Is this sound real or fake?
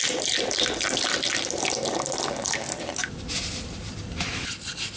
real